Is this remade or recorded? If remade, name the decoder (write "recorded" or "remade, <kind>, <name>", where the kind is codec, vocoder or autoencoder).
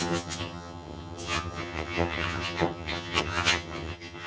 remade, vocoder, HiFi-GAN